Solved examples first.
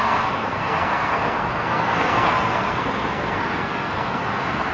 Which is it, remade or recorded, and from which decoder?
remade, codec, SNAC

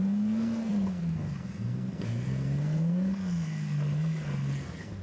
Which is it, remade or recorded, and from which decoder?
remade, codec, SNAC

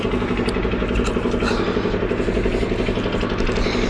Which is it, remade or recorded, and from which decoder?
recorded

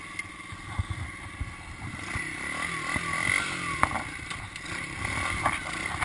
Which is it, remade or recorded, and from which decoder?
recorded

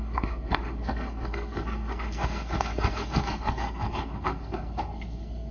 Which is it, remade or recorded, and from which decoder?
remade, codec, SNAC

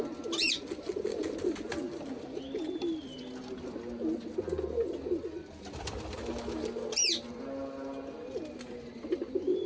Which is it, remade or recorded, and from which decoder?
recorded